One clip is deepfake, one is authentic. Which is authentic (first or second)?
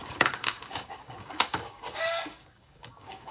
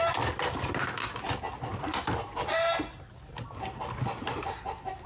second